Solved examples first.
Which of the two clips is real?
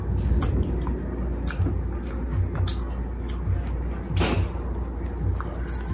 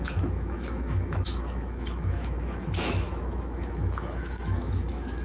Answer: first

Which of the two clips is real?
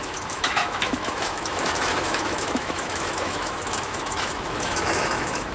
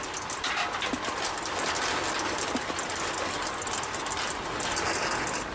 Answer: second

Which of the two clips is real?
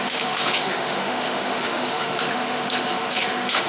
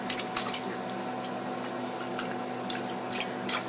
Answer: second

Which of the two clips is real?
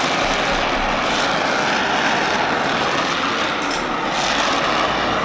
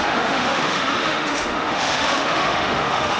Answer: first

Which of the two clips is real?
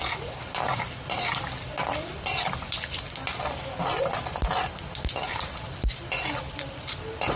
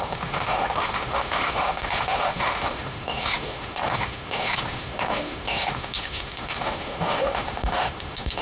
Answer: first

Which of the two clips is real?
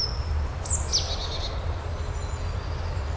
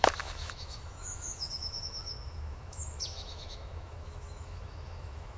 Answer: first